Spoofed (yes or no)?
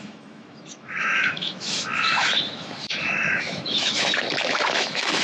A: yes